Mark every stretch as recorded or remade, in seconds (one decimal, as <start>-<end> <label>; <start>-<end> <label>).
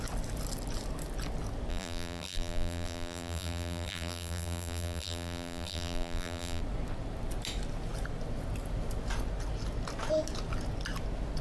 0.0-1.7 recorded; 1.7-6.6 remade; 6.6-11.4 recorded